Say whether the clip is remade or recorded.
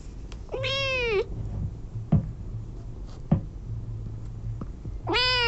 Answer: recorded